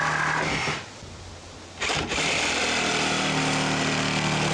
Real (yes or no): yes